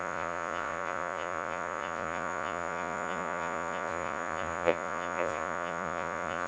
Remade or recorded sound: remade